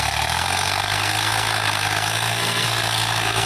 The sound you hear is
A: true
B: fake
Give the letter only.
B